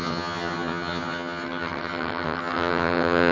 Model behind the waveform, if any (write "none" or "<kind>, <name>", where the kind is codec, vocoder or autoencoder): vocoder, HiFi-GAN